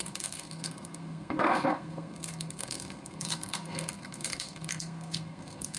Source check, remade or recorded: remade